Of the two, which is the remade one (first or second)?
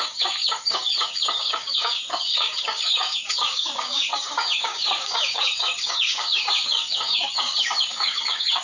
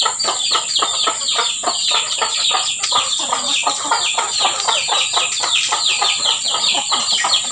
first